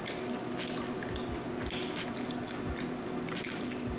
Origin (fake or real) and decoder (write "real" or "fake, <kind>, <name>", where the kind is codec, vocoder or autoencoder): real